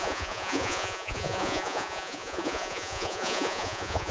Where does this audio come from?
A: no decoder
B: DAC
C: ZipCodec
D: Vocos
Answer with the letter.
D